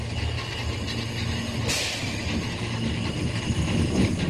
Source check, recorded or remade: recorded